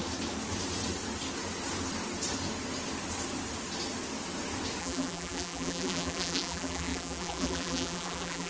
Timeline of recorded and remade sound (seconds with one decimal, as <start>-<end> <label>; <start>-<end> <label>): 0.0-4.8 recorded; 4.8-8.5 remade